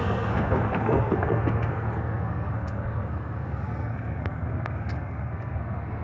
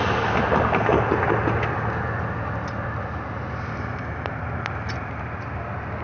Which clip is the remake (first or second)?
first